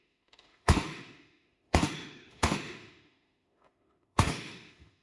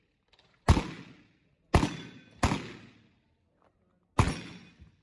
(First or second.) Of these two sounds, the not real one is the first